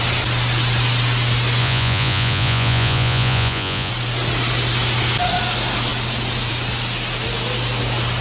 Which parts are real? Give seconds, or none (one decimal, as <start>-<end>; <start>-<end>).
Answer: 0.0-1.6; 3.9-8.2